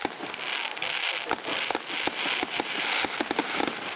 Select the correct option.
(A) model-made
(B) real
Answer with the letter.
B